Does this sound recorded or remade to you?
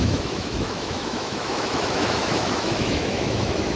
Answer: remade